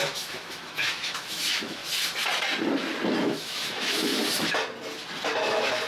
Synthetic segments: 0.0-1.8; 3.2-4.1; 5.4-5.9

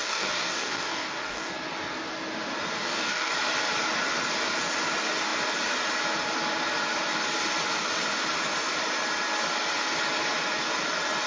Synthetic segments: 0.0-1.5; 2.8-3.3

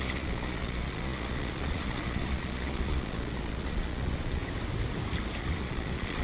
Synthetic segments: 0.0-4.4; 5.4-6.2

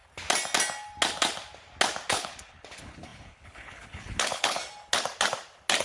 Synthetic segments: 2.1-4.6

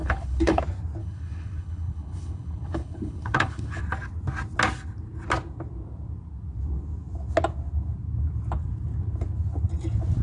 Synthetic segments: 0.0-0.6; 1.0-3.8

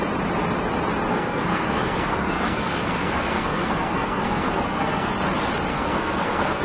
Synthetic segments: 1.1-5.1; 5.7-6.6

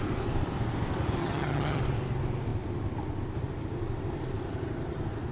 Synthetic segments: 1.2-1.8